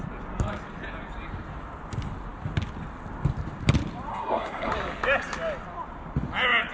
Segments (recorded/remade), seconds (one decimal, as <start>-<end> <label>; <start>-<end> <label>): 0.0-4.1 recorded; 4.1-4.7 remade; 4.7-6.7 recorded